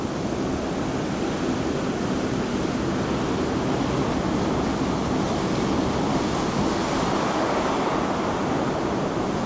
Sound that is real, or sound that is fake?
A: real